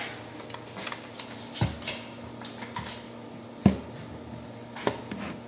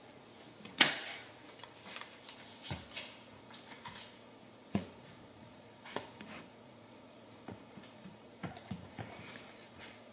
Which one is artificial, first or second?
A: second